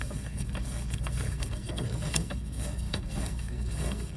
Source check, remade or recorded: remade